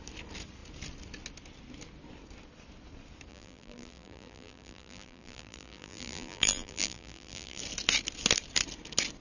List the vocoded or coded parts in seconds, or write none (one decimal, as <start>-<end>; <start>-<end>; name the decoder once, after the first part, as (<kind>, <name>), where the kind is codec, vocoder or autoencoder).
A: 3.3-7.6 (vocoder, BigVGAN v2)